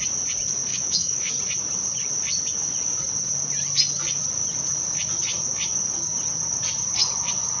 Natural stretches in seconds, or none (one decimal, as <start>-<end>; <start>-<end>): 0.0-0.7; 1.3-7.6